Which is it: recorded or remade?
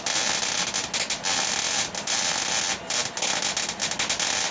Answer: recorded